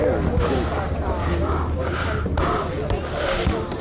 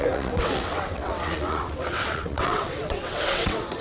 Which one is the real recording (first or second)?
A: first